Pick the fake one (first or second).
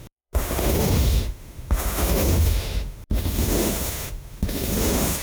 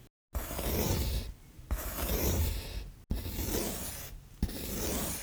first